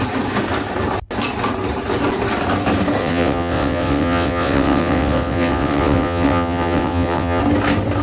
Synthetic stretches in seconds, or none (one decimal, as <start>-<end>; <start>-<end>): 3.0-7.4